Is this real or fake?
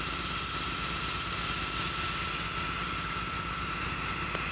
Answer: real